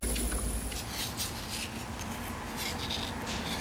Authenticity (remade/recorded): recorded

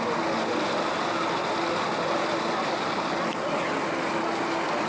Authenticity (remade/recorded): recorded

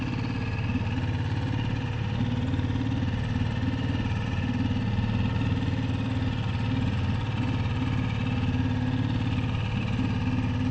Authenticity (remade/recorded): recorded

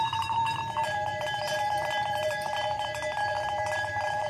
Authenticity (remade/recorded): remade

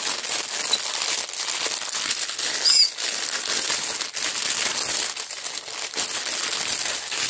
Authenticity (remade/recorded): recorded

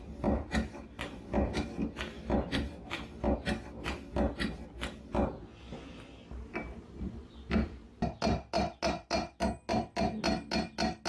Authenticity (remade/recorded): recorded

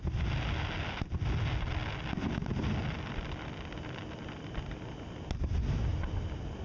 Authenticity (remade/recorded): recorded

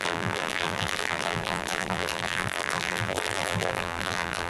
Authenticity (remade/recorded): remade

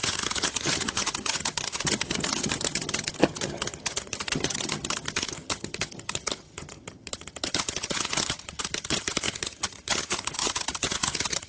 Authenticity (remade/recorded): remade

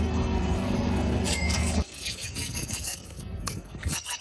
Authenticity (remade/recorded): remade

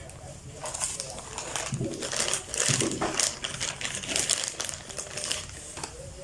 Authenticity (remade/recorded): recorded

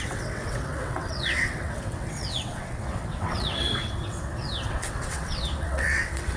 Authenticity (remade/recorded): remade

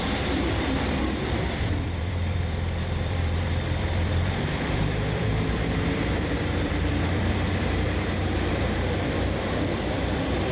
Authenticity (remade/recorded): remade